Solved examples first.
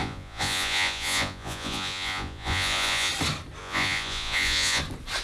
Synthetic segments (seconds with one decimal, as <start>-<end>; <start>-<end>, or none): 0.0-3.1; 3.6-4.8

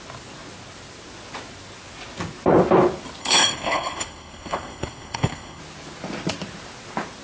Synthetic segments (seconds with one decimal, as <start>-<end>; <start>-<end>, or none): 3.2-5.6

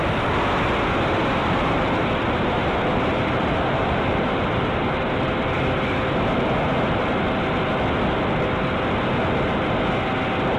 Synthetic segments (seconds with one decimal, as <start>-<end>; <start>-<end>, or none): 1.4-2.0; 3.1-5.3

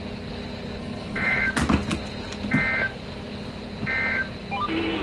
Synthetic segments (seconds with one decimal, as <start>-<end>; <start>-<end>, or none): 0.8-1.4

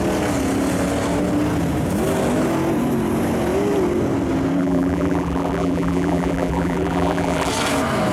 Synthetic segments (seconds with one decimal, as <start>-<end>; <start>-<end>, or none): 4.6-7.5